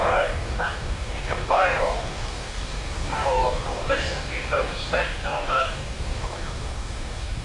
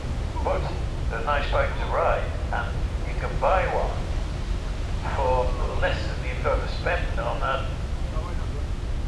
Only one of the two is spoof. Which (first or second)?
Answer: first